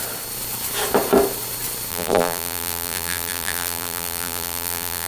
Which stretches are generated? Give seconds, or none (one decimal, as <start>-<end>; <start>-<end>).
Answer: 1.9-5.1